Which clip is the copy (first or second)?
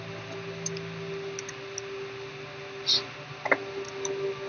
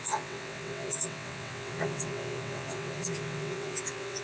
second